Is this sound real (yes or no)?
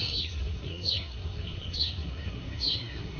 no